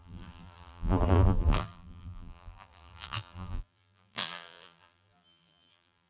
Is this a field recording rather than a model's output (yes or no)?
no